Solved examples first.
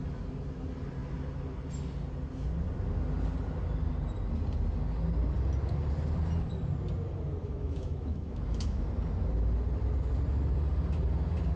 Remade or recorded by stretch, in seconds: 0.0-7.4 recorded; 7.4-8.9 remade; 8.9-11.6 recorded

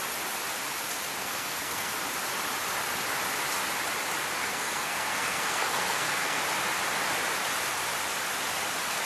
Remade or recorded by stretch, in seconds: 0.0-1.2 recorded; 1.2-1.9 remade; 1.9-4.4 recorded; 4.4-6.4 remade; 6.4-9.1 recorded

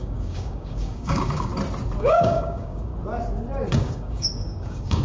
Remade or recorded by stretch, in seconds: 0.0-1.5 remade; 1.5-2.0 recorded; 2.0-2.9 remade; 2.9-3.7 recorded; 3.7-5.0 remade

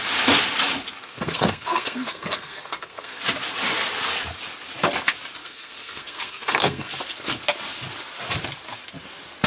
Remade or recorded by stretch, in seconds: 0.0-1.0 recorded; 1.0-3.2 remade; 3.2-5.4 recorded; 5.4-6.9 remade; 6.9-9.5 recorded